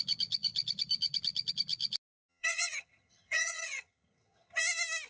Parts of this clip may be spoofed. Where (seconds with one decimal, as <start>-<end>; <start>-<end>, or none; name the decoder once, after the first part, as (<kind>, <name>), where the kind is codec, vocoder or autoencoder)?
2.3-4.6 (vocoder, HiFi-GAN)